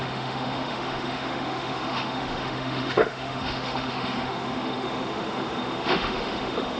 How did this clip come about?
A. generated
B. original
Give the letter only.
A